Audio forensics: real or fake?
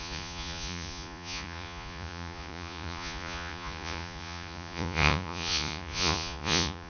fake